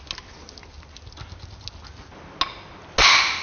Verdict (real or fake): real